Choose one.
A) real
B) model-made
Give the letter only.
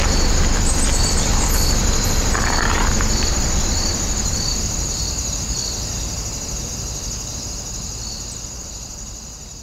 B